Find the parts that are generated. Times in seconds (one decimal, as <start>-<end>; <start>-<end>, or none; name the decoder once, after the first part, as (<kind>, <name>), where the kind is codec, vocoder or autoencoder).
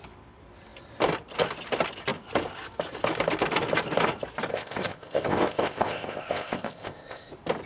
4.5-7.3 (codec, ZipCodec)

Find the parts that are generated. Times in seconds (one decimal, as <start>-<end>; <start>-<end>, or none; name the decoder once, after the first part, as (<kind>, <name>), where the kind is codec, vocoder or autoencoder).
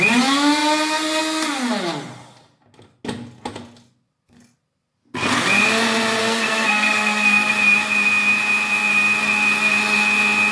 6.2-7.5 (codec, SNAC)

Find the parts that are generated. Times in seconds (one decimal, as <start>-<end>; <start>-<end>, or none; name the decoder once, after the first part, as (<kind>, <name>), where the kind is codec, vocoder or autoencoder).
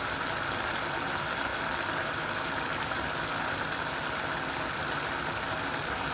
none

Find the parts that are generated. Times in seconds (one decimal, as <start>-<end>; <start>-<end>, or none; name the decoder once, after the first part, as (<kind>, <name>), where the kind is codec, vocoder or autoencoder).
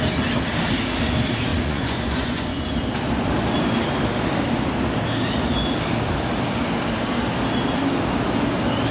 1.5-2.6 (vocoder, Vocos)